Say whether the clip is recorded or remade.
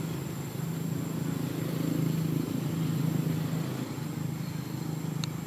recorded